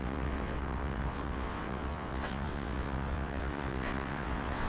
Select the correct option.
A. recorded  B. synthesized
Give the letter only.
B